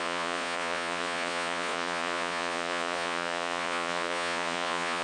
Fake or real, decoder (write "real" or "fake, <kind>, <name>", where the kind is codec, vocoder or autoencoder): fake, vocoder, Vocos